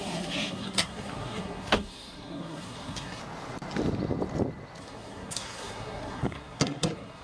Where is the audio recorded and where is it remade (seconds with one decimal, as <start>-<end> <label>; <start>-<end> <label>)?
0.0-3.2 remade; 3.2-4.8 recorded; 4.8-7.2 remade